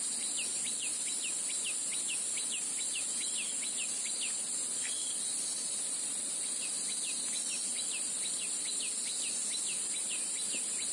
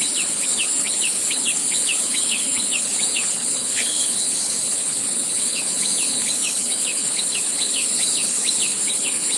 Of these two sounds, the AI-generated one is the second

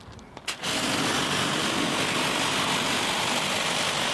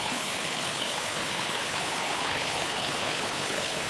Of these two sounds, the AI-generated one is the second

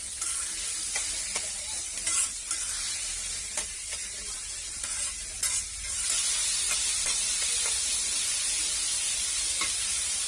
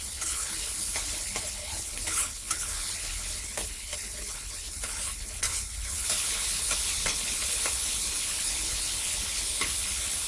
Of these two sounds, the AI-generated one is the second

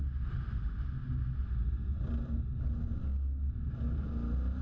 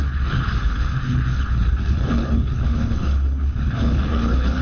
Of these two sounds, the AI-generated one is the second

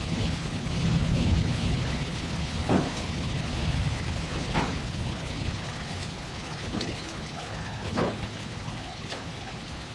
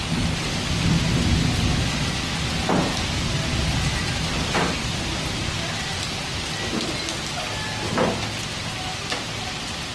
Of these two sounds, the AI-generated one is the first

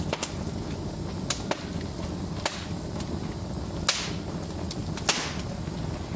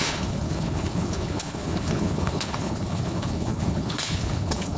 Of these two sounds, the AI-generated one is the second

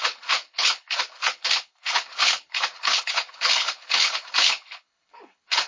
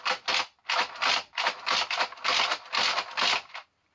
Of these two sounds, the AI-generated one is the first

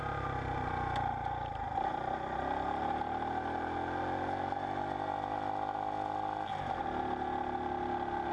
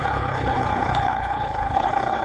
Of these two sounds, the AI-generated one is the second